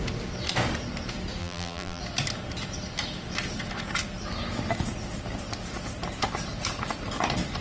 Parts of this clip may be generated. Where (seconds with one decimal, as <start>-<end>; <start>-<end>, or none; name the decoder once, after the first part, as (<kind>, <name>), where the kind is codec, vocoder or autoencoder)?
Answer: 1.4-2.0 (vocoder, BigVGAN v2)